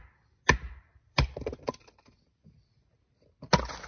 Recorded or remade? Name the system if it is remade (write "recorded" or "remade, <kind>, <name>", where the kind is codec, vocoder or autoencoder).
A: recorded